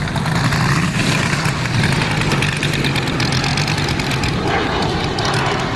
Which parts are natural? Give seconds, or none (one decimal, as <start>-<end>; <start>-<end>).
0.0-5.8